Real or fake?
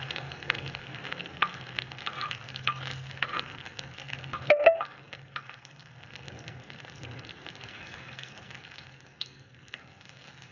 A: fake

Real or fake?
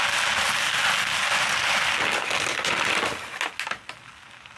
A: real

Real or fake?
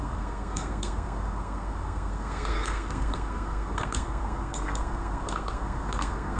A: fake